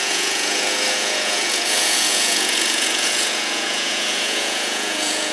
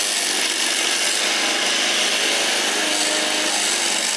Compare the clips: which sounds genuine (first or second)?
second